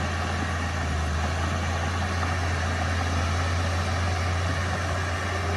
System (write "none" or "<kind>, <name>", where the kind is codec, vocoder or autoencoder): none